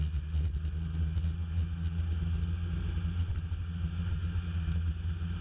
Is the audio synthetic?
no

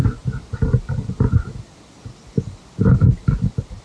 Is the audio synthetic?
no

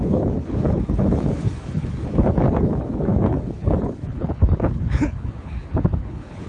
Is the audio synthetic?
yes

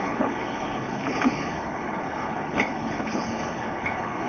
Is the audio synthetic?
yes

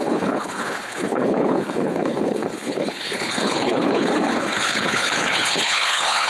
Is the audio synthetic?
yes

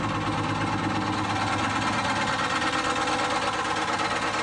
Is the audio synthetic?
no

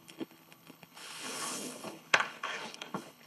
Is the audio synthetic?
yes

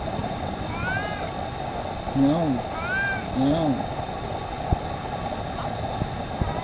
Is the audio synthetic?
no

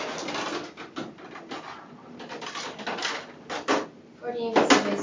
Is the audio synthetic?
no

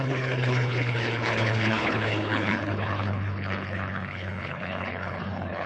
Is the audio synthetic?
yes